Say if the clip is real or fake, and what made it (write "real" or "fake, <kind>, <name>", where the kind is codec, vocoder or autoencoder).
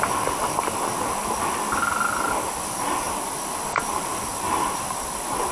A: real